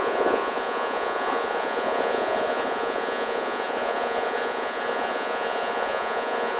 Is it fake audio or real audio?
fake